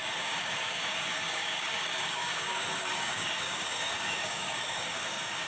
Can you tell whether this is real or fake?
fake